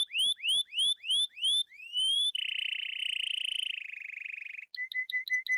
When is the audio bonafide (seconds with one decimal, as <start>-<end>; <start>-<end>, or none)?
0.0-1.8; 3.0-5.6

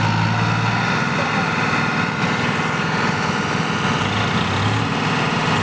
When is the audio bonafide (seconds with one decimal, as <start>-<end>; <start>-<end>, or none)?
0.0-5.6

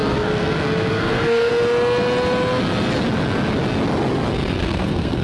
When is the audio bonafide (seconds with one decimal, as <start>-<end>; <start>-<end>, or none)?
1.5-4.6

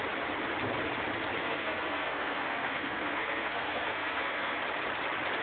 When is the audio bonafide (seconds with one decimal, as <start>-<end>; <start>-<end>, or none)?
0.0-1.4; 4.6-5.4